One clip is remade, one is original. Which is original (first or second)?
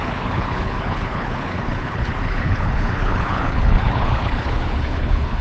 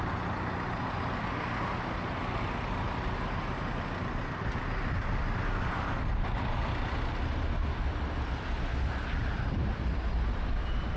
second